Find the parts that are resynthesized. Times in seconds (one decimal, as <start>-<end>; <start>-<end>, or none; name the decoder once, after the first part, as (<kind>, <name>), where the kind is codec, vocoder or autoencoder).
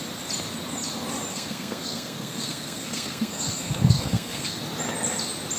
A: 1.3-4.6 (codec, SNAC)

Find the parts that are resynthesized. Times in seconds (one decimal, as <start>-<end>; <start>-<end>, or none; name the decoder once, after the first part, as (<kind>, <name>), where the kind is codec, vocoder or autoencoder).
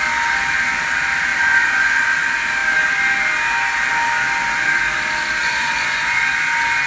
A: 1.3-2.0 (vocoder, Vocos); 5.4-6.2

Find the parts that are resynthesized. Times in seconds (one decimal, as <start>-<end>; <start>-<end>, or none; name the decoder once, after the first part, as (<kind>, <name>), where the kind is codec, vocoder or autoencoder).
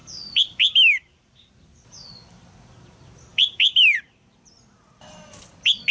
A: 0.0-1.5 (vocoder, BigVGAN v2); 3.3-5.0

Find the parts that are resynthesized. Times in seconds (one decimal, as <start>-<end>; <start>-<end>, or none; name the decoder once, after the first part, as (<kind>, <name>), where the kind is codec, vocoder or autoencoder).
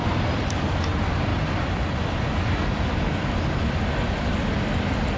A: none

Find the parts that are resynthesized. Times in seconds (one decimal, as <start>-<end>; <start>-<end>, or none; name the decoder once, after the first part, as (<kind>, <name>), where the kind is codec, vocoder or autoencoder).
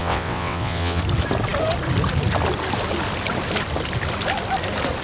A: 0.0-1.0 (vocoder, WaveNeXt)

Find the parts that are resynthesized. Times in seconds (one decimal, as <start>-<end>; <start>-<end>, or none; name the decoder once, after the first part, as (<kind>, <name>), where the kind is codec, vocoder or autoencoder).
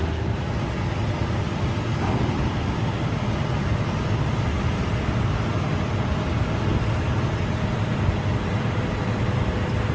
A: none